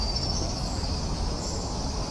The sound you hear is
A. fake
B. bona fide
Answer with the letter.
A